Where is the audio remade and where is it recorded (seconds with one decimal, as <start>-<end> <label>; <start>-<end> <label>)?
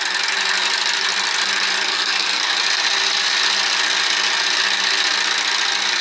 0.0-1.9 recorded; 1.9-2.5 remade; 2.5-6.0 recorded